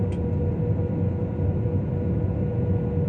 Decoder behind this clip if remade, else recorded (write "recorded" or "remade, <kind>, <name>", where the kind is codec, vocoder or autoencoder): recorded